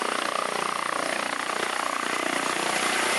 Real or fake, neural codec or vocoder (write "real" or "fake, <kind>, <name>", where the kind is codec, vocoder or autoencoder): real